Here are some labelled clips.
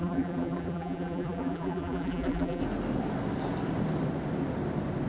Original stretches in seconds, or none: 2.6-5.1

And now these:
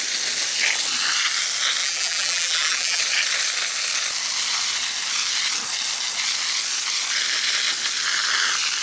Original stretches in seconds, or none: 0.0-1.8; 3.0-8.8

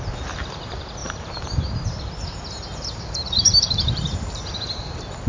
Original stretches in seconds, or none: 0.0-1.0; 1.6-2.7; 4.4-5.3

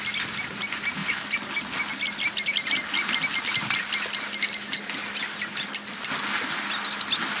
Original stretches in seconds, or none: 0.0-7.4

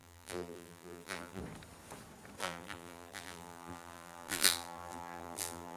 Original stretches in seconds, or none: 1.4-2.4

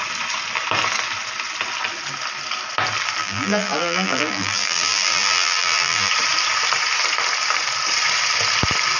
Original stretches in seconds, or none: 0.0-3.2; 6.1-9.0